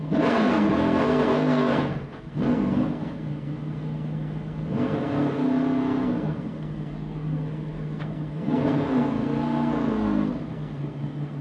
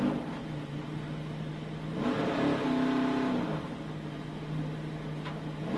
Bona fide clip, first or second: second